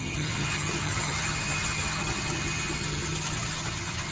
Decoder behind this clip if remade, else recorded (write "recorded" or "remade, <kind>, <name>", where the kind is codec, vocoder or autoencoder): remade, vocoder, HiFi-GAN